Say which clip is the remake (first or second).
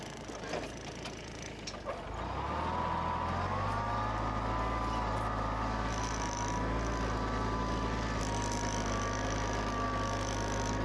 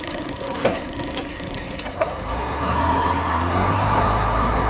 second